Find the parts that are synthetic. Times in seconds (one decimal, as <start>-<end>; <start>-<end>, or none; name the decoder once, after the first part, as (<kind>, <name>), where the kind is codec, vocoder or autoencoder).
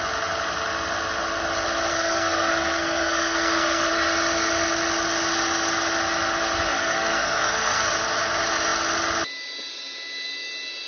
1.9-3.9 (codec, SNAC); 6.7-7.9